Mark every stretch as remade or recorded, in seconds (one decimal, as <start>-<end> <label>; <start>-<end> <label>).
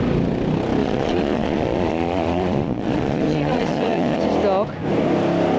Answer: 0.0-0.8 recorded; 0.8-4.2 remade; 4.2-5.6 recorded